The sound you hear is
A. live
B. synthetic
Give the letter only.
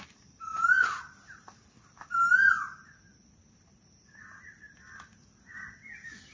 A